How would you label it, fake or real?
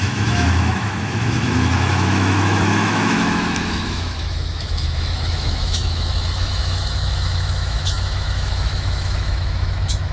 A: fake